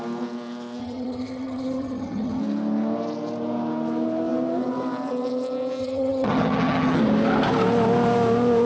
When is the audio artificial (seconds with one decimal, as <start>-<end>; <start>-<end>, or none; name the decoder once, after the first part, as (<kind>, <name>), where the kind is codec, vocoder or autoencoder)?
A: 0.8-2.4 (vocoder, HiFi-GAN); 5.8-7.0